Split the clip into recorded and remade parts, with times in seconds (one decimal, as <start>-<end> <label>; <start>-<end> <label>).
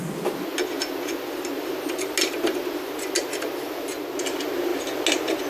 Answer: 0.0-5.5 recorded